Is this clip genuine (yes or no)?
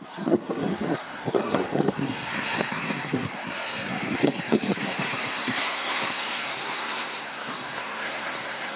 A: no